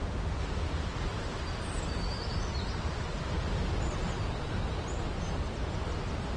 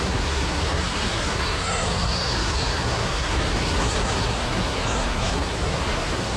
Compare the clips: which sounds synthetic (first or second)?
second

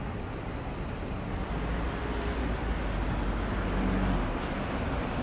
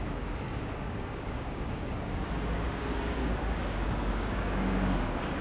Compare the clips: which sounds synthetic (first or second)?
second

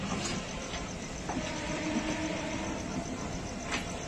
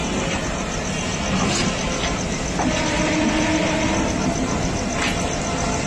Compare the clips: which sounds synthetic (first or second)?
first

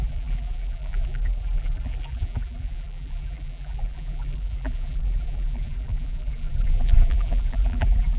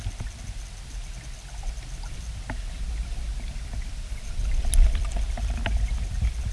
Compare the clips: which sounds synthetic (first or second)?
first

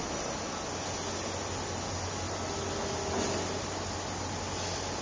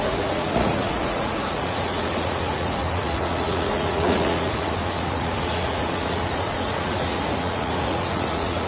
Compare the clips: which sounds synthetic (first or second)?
second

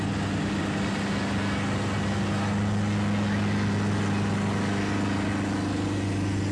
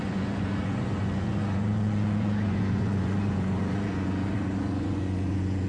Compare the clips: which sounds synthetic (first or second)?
second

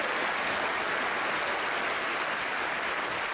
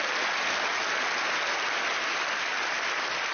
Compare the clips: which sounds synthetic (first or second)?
second